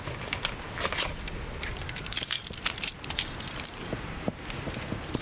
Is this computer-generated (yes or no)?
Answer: no